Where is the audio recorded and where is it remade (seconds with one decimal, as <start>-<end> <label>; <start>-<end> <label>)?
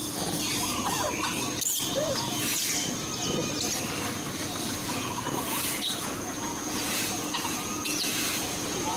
0.0-4.8 recorded; 4.8-9.0 remade